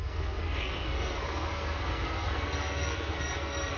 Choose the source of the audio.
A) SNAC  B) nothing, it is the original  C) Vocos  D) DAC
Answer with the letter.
A